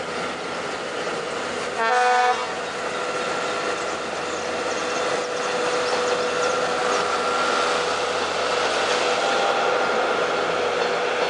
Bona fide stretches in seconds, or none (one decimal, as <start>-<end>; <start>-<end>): 0.0-11.3